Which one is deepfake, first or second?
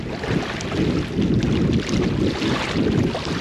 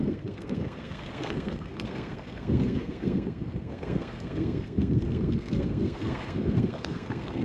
second